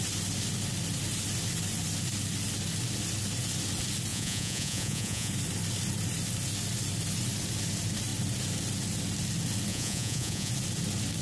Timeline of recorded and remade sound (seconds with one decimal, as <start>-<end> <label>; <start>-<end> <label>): 0.0-4.1 recorded; 4.1-5.3 remade; 5.3-9.7 recorded; 9.7-10.5 remade; 10.5-11.2 recorded